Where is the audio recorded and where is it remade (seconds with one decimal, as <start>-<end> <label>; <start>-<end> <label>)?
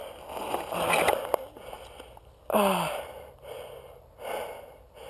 0.0-5.1 recorded